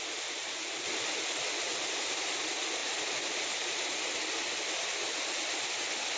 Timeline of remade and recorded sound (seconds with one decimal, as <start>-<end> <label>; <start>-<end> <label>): 0.0-2.8 recorded; 2.8-4.0 remade; 4.0-6.2 recorded